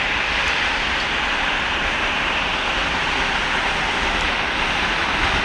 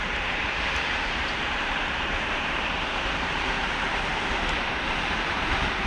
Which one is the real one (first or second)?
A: first